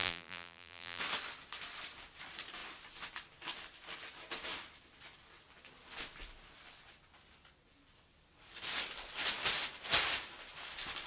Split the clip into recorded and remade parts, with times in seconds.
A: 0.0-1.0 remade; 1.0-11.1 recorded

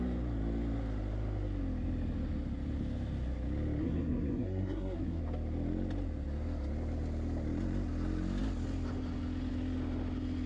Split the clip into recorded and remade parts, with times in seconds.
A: 0.0-3.8 recorded; 3.8-5.2 remade; 5.2-10.5 recorded

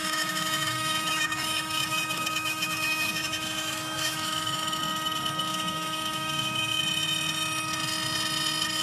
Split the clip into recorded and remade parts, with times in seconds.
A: 0.0-4.8 remade; 4.8-5.5 recorded; 5.5-6.8 remade; 6.8-8.8 recorded

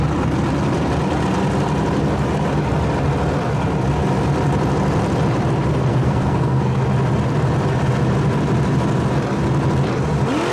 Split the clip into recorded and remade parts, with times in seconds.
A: 0.0-5.9 recorded; 5.9-6.8 remade; 6.8-10.5 recorded

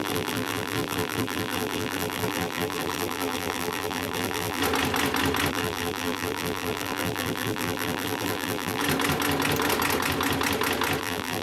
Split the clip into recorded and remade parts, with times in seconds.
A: 0.0-4.6 remade; 4.6-5.5 recorded; 5.5-8.8 remade; 8.8-11.0 recorded; 11.0-11.4 remade

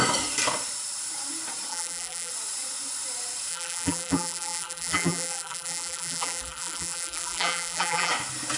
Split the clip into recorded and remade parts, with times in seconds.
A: 0.0-1.7 recorded; 1.7-2.3 remade; 2.3-3.5 recorded; 3.5-8.1 remade; 8.1-8.6 recorded

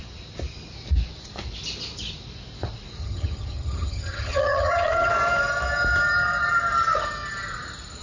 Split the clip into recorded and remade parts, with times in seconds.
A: 0.0-3.0 recorded; 3.0-5.1 remade; 5.1-8.0 recorded